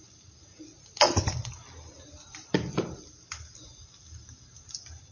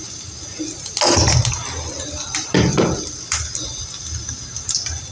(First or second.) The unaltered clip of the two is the second